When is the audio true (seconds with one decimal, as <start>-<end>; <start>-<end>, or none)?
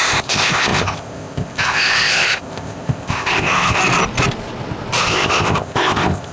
3.8-5.0